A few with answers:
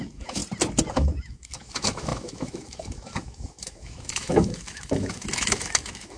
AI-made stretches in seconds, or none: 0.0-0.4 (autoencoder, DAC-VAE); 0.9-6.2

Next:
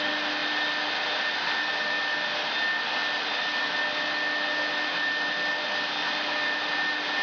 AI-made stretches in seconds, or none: none

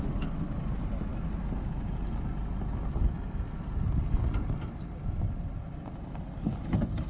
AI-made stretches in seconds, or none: none